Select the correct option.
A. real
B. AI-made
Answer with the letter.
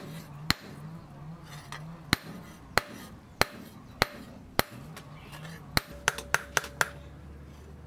A